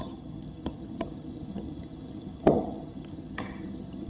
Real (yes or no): no